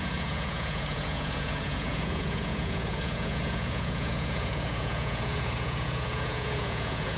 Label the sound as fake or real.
fake